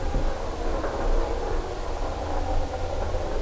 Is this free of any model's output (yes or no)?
yes